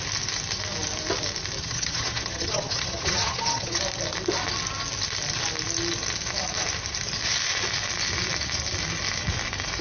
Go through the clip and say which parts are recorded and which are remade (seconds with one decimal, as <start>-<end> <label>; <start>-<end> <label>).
0.0-1.6 recorded; 1.6-3.8 remade; 3.8-9.8 recorded